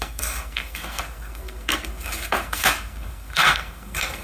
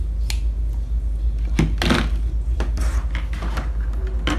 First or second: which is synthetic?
first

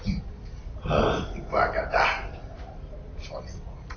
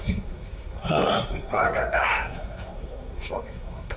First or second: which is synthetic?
second